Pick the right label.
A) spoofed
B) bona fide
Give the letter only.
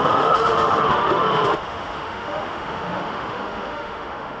A